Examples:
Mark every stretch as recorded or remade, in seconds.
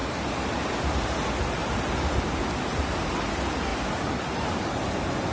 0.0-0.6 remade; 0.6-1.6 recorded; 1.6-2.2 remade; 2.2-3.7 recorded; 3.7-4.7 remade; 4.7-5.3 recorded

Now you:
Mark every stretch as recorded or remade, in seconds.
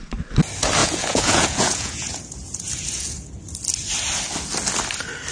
0.0-0.8 recorded; 0.8-3.4 remade; 3.4-5.3 recorded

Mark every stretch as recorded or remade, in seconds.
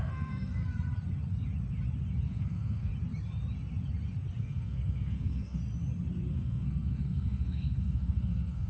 0.0-0.6 remade; 0.6-2.3 recorded; 2.3-2.9 remade; 2.9-4.4 recorded; 4.4-5.6 remade; 5.6-6.3 recorded; 6.3-8.7 remade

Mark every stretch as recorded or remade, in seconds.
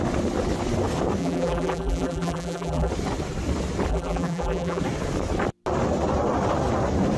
0.0-1.2 recorded; 1.2-2.9 remade; 2.9-3.9 recorded; 3.9-4.8 remade; 4.8-7.2 recorded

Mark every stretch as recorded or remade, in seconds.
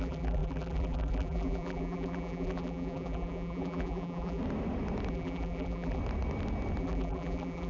0.0-4.4 remade; 4.4-5.1 recorded; 5.1-6.0 remade; 6.0-6.8 recorded; 6.8-7.7 remade